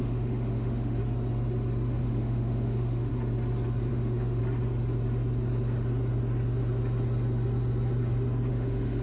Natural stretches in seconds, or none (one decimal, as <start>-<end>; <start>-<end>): 1.0-2.0; 3.1-3.9; 4.4-8.5